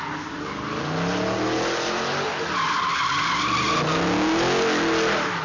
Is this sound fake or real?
real